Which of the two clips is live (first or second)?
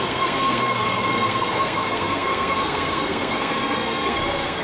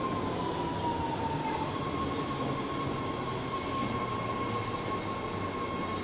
second